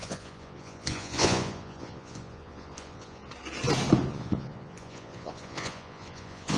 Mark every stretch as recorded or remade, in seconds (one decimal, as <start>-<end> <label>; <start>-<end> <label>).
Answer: 0.0-3.2 remade; 3.2-4.1 recorded; 4.1-6.6 remade